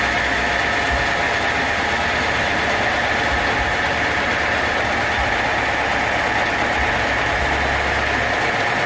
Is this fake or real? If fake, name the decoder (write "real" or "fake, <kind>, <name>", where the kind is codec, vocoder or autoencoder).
real